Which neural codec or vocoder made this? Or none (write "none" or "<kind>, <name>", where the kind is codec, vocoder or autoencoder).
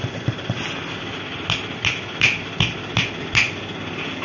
none